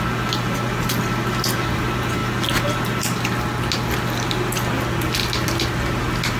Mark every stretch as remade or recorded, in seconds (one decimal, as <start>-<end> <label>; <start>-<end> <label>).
0.0-6.4 recorded